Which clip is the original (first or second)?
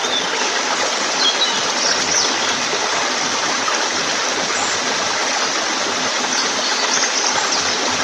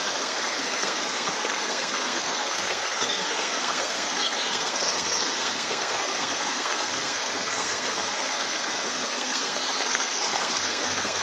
first